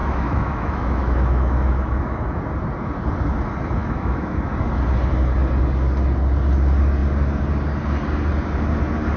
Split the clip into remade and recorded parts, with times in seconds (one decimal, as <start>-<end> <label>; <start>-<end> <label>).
0.0-2.4 remade; 2.4-3.8 recorded; 3.8-4.5 remade; 4.5-9.2 recorded